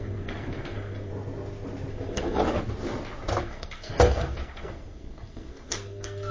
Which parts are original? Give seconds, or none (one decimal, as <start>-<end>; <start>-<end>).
1.1-1.9; 2.4-3.4